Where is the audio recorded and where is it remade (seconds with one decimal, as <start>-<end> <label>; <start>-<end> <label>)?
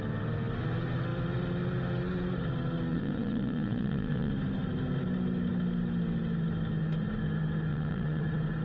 0.0-2.9 recorded; 2.9-4.3 remade; 4.3-7.7 recorded; 7.7-8.2 remade; 8.2-8.6 recorded